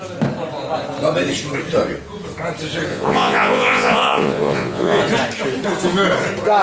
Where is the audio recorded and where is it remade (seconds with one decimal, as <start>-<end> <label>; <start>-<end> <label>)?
0.0-2.9 recorded; 2.9-5.0 remade; 5.0-6.6 recorded